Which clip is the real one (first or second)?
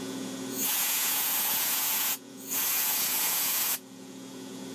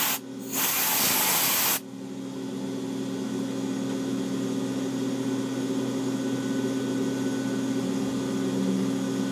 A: second